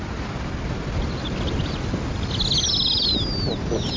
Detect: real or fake real